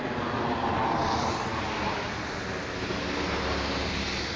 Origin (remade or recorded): recorded